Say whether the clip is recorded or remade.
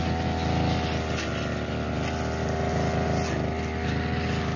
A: recorded